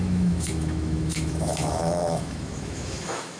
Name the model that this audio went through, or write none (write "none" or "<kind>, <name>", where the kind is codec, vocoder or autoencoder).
autoencoder, DAC-VAE